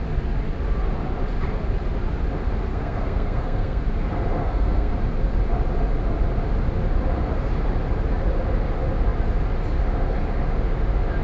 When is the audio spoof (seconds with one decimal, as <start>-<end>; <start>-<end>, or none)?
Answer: 2.7-3.8; 4.4-4.9